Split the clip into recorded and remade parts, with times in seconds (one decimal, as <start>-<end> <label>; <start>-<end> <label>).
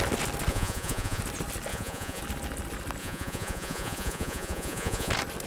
0.0-0.5 recorded; 0.5-1.2 remade; 1.2-1.7 recorded; 1.7-2.2 remade; 2.2-3.0 recorded; 3.0-5.1 remade; 5.1-5.5 recorded